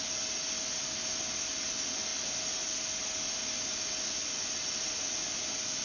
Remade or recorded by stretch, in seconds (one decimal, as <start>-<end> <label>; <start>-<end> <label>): 0.0-5.8 recorded